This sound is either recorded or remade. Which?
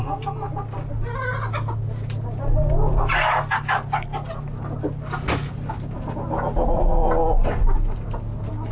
recorded